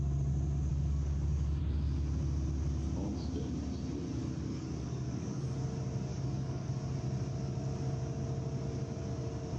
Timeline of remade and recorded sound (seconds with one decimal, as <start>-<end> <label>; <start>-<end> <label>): 0.0-0.7 recorded; 0.7-1.6 remade; 1.6-4.2 recorded; 4.2-5.5 remade; 5.5-6.1 recorded; 6.1-6.7 remade; 6.7-9.6 recorded